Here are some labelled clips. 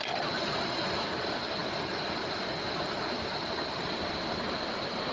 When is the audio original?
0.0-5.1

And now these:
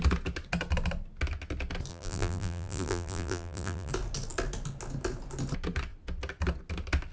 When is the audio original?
0.0-1.9; 3.9-7.1

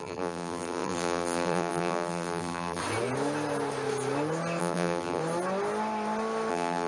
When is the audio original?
2.8-4.6; 5.2-6.5

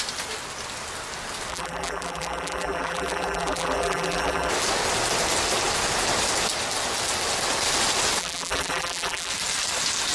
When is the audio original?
0.0-1.5; 4.5-8.2; 9.3-10.1

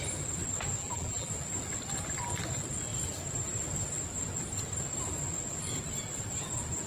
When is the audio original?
0.0-0.8; 1.3-6.9

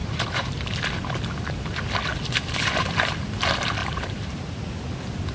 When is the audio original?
0.8-2.1; 3.2-3.8; 4.6-5.3

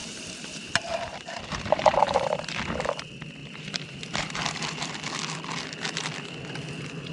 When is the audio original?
2.6-3.4; 4.6-7.1